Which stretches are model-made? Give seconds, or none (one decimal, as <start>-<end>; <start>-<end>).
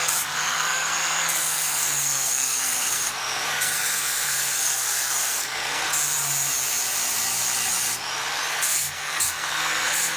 0.0-5.9; 8.5-10.2